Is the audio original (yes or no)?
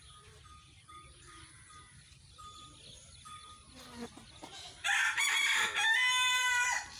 yes